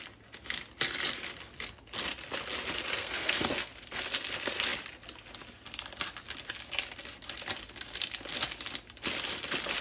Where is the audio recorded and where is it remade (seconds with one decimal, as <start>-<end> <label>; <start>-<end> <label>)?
0.0-3.0 recorded; 3.0-3.7 remade; 3.7-9.8 recorded